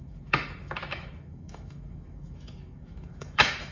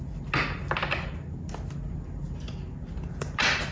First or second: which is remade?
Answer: first